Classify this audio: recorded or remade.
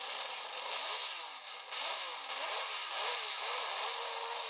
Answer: remade